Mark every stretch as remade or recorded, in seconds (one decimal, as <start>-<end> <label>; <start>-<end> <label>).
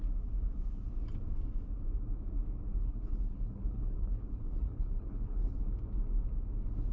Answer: 0.0-2.8 recorded; 2.8-5.6 remade; 5.6-6.9 recorded